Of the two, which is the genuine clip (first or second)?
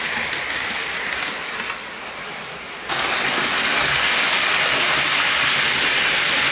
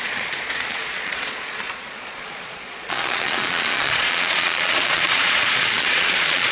first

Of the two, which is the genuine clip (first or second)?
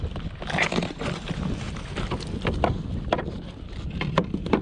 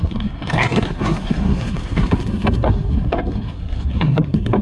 first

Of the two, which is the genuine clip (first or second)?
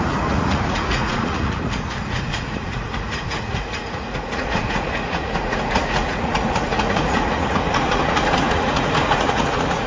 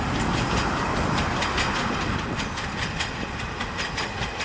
second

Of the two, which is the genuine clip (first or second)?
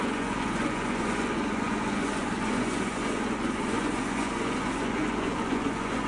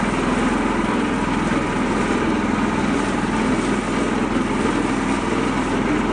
second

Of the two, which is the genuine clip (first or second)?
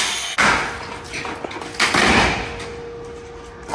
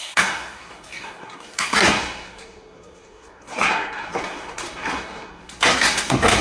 first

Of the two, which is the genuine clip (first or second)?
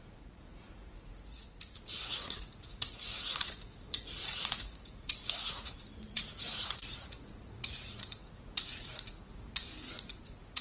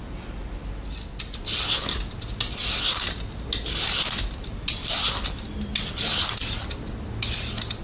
second